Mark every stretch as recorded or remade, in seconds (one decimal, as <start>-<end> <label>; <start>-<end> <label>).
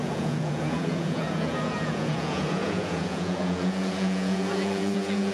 0.0-5.3 remade